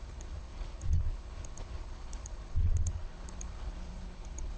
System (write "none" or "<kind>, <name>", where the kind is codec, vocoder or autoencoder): codec, HILCodec